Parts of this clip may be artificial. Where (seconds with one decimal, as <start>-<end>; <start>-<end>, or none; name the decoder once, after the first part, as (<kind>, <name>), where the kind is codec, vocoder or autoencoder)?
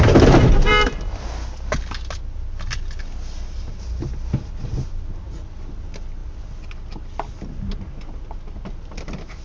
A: none